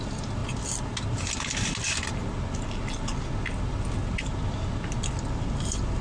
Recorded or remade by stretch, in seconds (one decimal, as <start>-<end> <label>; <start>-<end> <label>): 0.0-6.0 recorded